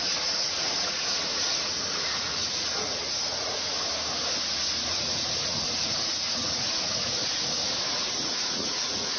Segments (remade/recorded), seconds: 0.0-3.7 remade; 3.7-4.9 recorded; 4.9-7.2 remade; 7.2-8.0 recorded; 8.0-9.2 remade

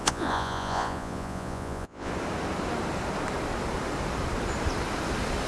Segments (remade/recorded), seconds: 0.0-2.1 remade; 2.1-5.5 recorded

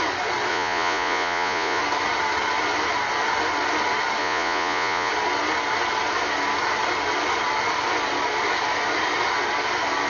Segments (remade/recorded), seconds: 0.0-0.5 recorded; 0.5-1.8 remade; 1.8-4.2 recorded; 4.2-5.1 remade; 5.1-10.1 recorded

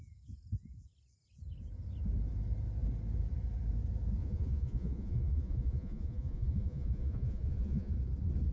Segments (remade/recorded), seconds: 0.0-4.2 recorded; 4.2-7.9 remade; 7.9-8.5 recorded

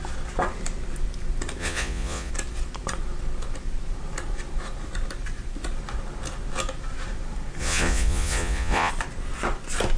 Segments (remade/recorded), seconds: 0.0-1.6 recorded; 1.6-2.3 remade; 2.3-7.6 recorded; 7.6-8.9 remade; 8.9-10.0 recorded

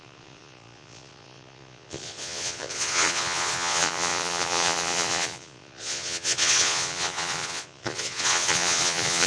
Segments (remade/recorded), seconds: 0.0-9.3 remade

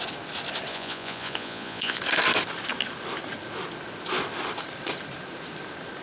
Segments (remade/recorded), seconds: 0.0-0.7 recorded; 0.7-2.0 remade; 2.0-6.0 recorded

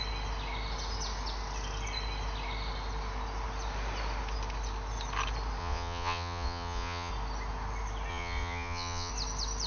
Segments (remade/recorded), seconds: 0.0-5.6 recorded; 5.6-7.1 remade; 7.1-8.1 recorded; 8.1-9.1 remade; 9.1-9.7 recorded